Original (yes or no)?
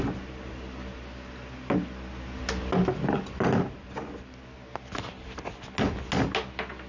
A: yes